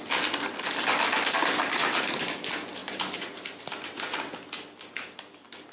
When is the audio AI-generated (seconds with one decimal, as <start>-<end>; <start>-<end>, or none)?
1.8-2.4; 2.8-3.6